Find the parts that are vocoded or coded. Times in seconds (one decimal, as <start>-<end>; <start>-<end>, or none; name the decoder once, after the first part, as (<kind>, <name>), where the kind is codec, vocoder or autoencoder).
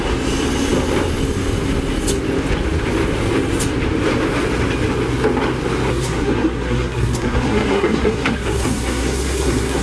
5.9-9.8 (codec, SNAC)